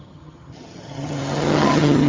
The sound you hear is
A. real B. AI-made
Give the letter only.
B